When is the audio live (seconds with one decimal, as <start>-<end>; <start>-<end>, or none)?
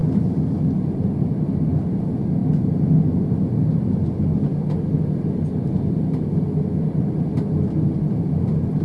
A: 0.0-8.8